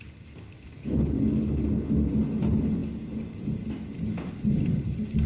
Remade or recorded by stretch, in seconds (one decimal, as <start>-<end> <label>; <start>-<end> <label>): 0.0-0.8 recorded; 0.8-1.6 remade; 1.6-5.3 recorded